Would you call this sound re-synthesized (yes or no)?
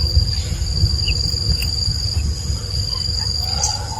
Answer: no